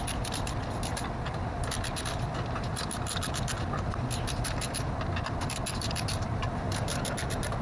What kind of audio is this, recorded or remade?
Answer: recorded